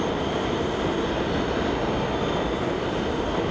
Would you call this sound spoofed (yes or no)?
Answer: no